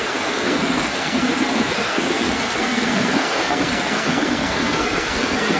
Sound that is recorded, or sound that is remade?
remade